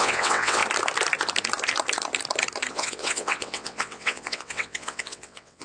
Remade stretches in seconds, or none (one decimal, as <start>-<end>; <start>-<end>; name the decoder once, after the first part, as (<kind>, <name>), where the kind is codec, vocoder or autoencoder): 0.0-0.6 (vocoder, WaveNeXt); 2.7-5.6